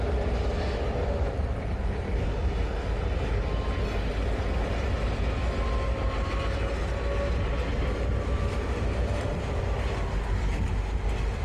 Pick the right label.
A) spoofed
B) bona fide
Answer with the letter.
B